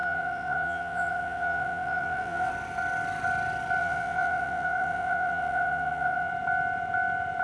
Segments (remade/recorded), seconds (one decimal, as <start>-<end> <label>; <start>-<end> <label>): 0.0-2.5 remade; 2.5-3.8 recorded; 3.8-6.3 remade; 6.3-7.4 recorded